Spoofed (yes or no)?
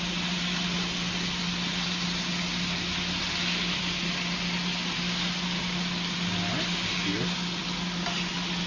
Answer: no